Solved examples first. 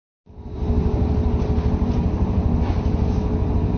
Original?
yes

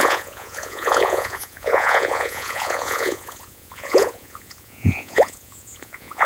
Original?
no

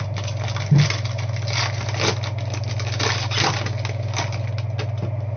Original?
yes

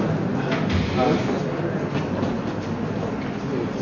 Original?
yes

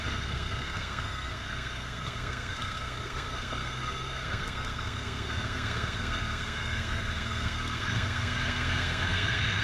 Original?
no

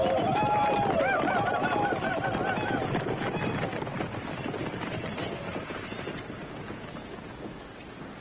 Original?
yes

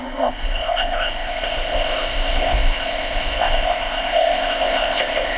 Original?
no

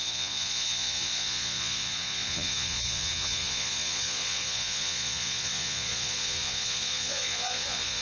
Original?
no